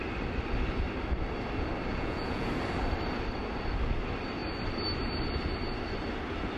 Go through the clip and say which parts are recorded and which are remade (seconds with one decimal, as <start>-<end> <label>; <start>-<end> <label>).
0.0-1.9 recorded; 1.9-2.5 remade; 2.5-6.6 recorded